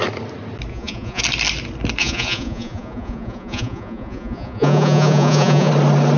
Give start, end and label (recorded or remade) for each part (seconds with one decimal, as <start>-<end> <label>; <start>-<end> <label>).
0.0-0.7 recorded; 0.7-1.2 remade; 1.2-2.0 recorded; 2.0-5.7 remade; 5.7-6.2 recorded